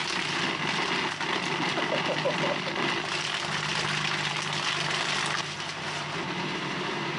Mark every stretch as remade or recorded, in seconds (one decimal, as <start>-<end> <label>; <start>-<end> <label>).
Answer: 0.0-7.2 recorded